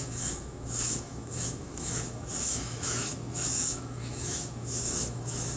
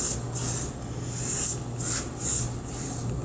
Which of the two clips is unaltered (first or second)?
second